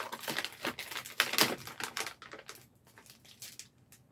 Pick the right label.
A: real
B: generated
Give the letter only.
A